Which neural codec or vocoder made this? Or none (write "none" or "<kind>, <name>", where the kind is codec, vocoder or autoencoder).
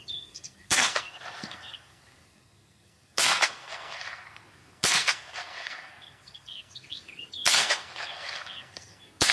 codec, SNAC